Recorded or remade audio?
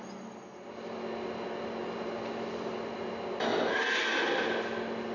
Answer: recorded